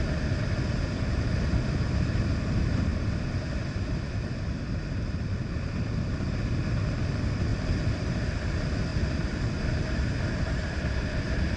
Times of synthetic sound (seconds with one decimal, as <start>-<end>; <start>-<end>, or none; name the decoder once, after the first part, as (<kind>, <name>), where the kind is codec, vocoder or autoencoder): 2.9-6.2 (vocoder, BigVGAN v2); 7.5-8.1; 8.9-11.6